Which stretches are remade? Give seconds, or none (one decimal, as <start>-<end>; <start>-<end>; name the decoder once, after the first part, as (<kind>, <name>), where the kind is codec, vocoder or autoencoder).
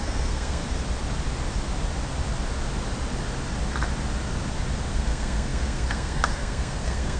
0.0-0.6 (codec, SNAC); 4.9-7.2